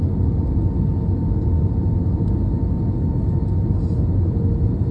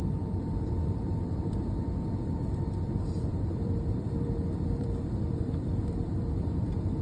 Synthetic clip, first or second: second